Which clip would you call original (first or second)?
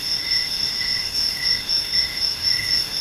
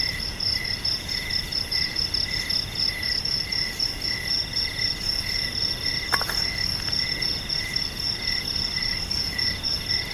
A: second